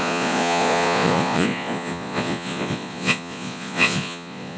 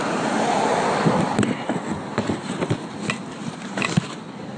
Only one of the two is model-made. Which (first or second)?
first